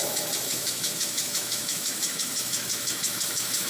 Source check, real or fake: fake